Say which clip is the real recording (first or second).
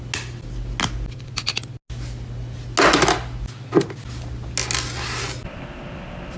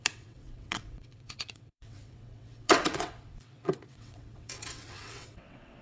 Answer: first